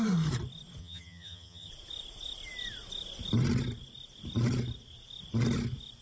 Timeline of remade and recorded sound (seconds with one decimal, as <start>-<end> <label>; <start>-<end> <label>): 0.0-0.8 recorded; 0.8-1.7 remade; 1.7-6.0 recorded